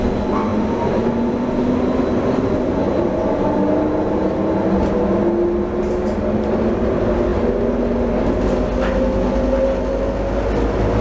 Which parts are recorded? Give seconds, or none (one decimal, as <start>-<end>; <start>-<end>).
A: 0.0-11.0